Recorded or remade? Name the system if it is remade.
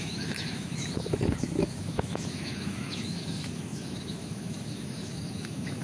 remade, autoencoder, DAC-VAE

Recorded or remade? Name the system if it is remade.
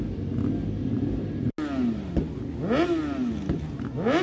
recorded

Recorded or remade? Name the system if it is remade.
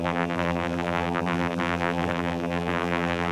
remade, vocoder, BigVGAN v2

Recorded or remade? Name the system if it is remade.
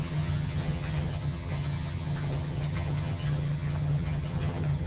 remade, vocoder, HiFi-GAN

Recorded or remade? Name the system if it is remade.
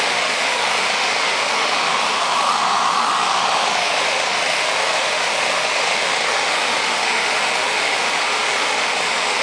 remade, autoencoder, DAC-VAE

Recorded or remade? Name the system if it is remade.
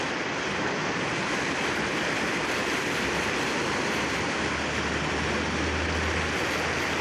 recorded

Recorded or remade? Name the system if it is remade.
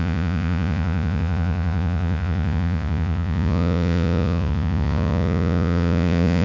remade, vocoder, Vocos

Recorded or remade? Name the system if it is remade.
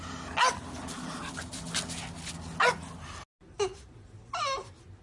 recorded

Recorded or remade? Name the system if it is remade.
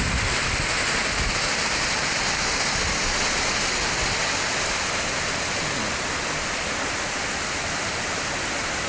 recorded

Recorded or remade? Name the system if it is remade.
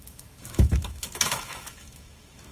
remade, autoencoder, DAC-VAE